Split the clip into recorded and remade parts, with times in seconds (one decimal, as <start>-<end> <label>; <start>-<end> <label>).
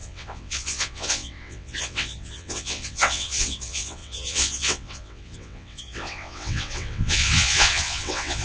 0.0-8.4 remade